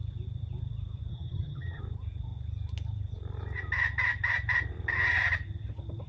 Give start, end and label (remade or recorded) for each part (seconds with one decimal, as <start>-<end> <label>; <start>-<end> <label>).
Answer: 0.0-1.1 recorded; 1.1-1.8 remade; 1.8-6.1 recorded